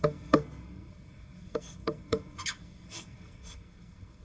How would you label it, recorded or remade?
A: remade